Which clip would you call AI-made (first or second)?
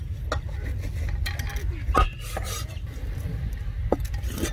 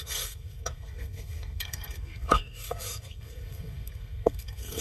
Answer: second